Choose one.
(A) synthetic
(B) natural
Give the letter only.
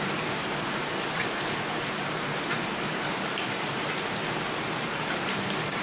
A